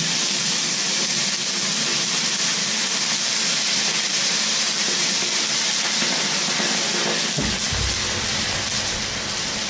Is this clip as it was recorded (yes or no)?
yes